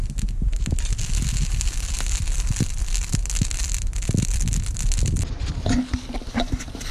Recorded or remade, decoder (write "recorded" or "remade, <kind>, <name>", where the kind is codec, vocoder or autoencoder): recorded